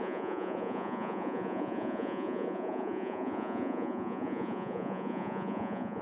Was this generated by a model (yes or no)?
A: yes